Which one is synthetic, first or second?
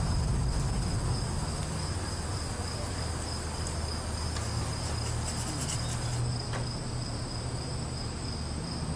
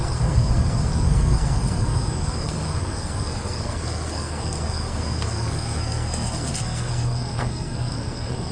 second